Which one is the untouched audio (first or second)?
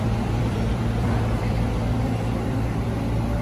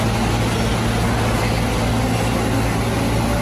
second